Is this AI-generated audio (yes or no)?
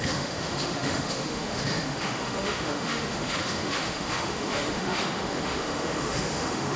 yes